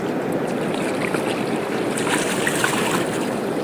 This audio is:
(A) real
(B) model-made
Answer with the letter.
A